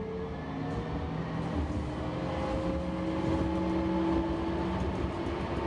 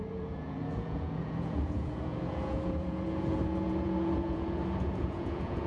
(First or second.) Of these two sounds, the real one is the first